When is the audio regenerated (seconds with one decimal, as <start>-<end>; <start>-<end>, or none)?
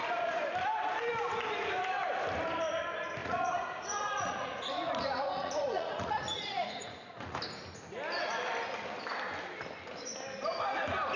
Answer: 3.2-7.4